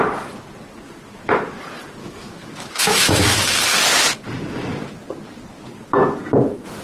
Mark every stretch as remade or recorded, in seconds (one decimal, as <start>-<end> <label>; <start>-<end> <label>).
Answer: 0.0-2.0 recorded; 2.0-3.2 remade; 3.2-6.8 recorded